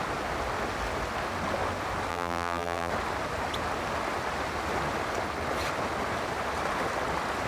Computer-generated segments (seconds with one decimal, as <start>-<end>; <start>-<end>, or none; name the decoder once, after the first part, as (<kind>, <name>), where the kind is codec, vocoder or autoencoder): 2.1-2.9 (vocoder, BigVGAN v2)